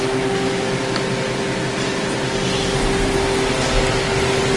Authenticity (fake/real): real